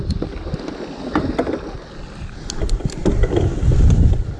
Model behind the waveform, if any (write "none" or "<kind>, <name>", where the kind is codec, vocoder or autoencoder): none